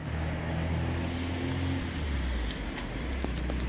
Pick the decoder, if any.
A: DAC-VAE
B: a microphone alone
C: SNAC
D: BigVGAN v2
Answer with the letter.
B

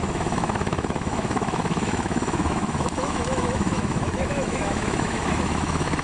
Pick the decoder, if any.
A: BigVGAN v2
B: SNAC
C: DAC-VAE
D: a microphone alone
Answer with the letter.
C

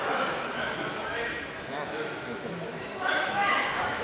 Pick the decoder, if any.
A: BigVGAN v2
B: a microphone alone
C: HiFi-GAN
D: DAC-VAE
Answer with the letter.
D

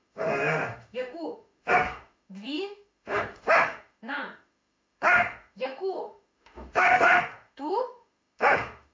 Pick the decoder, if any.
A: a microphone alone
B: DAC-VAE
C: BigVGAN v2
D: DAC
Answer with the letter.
B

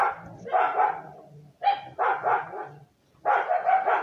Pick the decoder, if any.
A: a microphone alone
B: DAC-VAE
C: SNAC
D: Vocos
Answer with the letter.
A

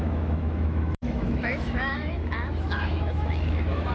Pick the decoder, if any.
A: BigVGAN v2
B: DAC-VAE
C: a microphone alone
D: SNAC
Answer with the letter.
B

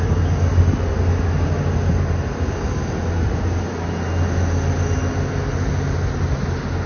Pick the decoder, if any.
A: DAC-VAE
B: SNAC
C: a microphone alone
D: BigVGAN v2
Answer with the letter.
C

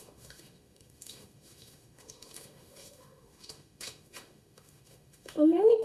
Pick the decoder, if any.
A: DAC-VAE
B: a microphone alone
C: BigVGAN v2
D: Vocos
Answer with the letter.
A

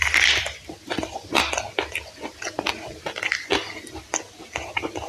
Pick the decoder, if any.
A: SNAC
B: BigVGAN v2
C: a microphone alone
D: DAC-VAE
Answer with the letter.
C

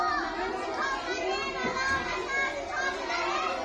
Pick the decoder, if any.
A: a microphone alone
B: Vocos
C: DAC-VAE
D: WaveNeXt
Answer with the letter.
A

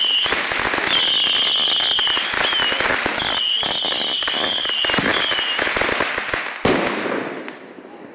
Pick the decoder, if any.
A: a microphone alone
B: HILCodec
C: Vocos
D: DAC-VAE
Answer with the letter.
A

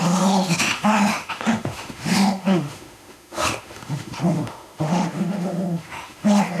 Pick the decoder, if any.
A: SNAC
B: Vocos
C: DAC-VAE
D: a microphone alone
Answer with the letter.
C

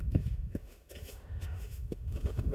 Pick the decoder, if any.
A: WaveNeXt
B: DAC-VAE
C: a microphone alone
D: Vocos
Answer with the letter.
B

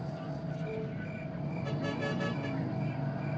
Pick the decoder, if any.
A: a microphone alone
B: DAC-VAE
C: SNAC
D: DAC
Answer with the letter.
A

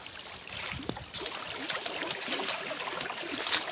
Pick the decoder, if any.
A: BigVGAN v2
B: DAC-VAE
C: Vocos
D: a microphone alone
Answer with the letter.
D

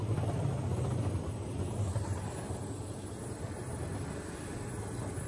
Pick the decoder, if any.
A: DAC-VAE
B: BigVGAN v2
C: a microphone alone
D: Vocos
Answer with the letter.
C